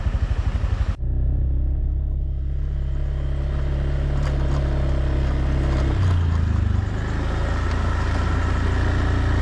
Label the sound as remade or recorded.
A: recorded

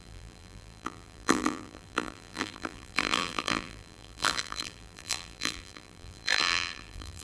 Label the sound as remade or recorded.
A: remade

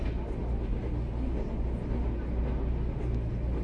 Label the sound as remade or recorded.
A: recorded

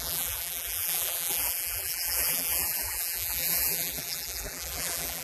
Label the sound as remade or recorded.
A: remade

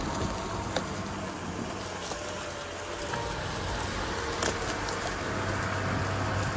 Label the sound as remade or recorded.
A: recorded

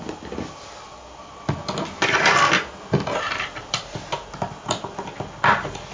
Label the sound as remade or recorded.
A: recorded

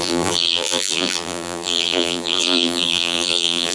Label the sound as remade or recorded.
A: remade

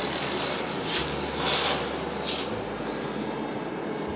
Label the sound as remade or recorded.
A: recorded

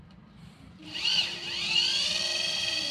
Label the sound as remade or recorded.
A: remade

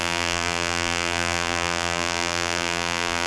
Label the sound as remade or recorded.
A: remade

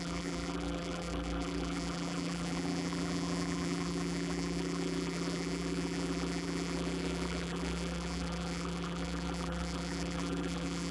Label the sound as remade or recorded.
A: remade